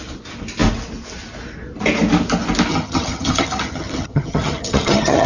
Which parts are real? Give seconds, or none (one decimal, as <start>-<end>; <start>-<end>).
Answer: 0.0-2.7